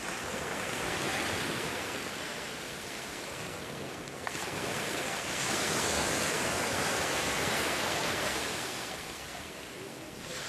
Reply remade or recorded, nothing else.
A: remade